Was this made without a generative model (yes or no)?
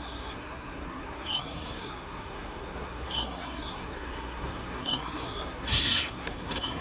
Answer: no